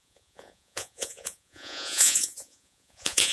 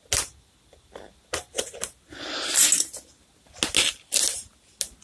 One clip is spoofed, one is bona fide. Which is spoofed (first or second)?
first